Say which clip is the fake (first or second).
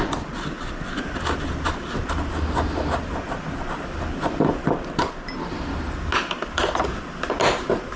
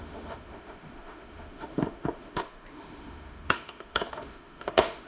second